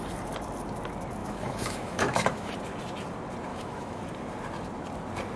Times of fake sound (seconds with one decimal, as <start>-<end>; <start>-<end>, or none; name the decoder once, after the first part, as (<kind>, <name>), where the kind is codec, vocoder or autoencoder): 1.2-2.5 (autoencoder, DAC-VAE); 3.5-4.0